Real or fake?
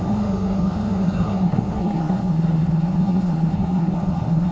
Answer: fake